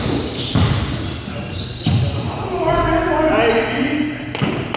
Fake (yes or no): no